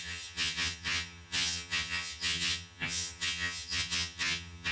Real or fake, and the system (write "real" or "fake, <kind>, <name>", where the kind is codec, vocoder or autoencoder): fake, vocoder, HiFi-GAN